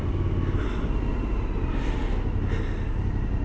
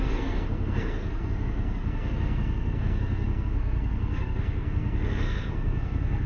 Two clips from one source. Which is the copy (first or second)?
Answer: second